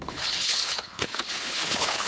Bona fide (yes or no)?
no